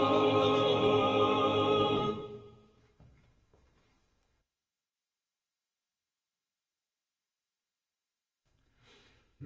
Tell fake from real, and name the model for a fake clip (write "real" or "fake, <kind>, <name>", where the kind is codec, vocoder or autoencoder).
fake, autoencoder, DAC-VAE